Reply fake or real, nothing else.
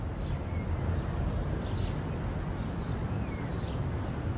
real